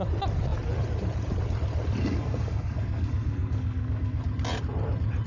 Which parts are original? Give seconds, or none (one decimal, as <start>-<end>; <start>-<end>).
0.0-2.0; 4.2-5.3